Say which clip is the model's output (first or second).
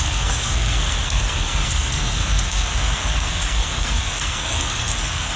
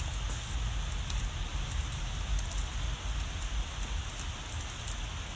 first